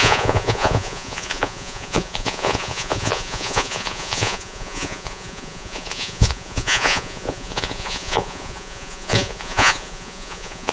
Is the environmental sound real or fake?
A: fake